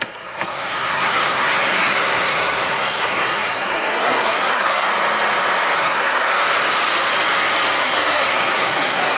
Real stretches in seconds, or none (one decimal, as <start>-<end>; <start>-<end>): 4.9-5.8; 6.3-7.8